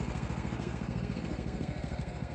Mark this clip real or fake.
fake